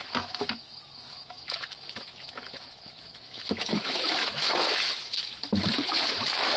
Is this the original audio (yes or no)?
no